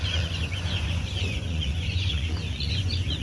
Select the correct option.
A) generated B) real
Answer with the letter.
A